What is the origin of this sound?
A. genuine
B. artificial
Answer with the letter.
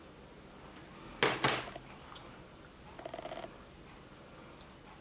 A